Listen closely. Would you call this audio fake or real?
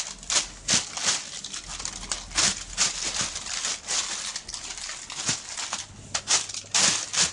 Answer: real